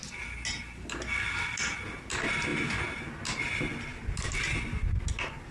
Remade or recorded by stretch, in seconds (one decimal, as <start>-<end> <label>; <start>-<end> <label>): 0.0-5.5 recorded

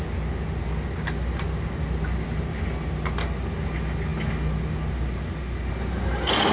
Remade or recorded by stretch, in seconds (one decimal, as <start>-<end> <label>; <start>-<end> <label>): 0.0-6.5 recorded

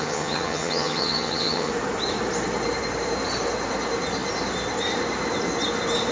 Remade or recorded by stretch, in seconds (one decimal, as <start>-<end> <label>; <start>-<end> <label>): 0.0-1.7 remade; 1.7-6.1 recorded

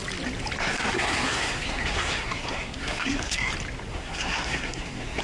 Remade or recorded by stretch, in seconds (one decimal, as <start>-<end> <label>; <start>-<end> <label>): 0.0-0.6 recorded; 0.6-3.5 remade; 3.5-3.9 recorded; 3.9-5.2 remade